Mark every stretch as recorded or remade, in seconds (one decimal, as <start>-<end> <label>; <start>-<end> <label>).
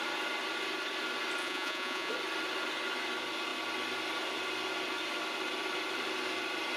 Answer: 0.0-1.4 recorded; 1.4-2.1 remade; 2.1-6.8 recorded